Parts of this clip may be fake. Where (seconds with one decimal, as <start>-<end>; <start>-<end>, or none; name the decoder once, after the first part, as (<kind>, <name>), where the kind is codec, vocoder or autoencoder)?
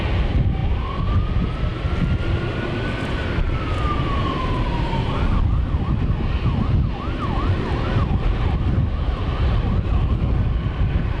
none